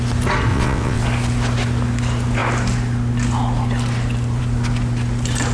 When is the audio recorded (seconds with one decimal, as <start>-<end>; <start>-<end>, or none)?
0.0-0.5; 1.0-5.5